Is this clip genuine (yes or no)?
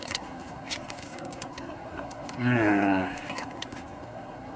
no